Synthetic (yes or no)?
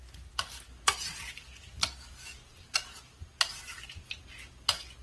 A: no